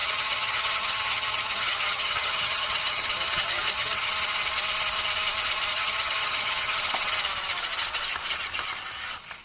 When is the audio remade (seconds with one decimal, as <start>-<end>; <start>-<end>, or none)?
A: 0.0-4.1; 5.7-6.8